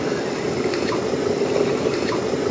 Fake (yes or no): no